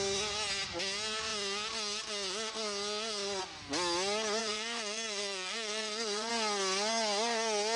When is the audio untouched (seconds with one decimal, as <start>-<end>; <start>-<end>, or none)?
0.0-4.4; 6.3-7.8